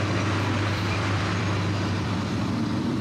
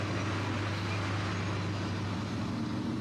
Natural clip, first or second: second